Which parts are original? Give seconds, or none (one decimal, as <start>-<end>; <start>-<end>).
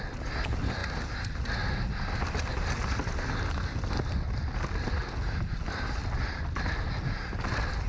0.0-7.9